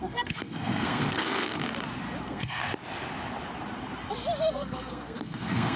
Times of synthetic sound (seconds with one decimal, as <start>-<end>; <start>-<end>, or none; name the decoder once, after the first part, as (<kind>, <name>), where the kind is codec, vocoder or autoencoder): 0.0-1.6 (codec, SNAC); 2.2-2.6; 4.5-5.8

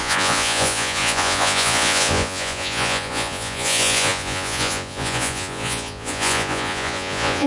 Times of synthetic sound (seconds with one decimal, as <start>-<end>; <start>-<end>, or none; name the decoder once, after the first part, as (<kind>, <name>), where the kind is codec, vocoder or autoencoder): 0.0-7.5 (vocoder, Vocos)

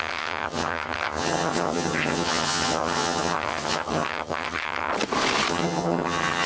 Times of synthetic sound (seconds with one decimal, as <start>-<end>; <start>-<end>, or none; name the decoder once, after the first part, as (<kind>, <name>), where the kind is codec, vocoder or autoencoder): 0.0-4.9 (vocoder, HiFi-GAN); 5.5-6.5

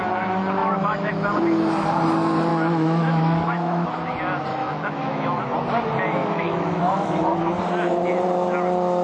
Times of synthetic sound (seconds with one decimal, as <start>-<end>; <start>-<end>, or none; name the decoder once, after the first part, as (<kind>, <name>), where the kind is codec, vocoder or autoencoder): 0.6-1.1 (autoencoder, DAC-VAE); 2.5-3.9; 4.5-5.4; 6.2-7.4

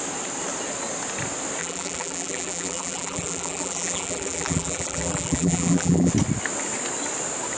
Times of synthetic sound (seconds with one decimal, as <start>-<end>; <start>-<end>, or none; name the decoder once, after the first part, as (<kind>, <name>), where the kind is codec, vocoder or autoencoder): 1.6-6.1 (vocoder, BigVGAN v2)